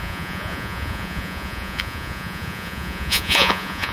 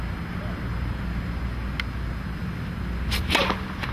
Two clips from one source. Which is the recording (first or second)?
second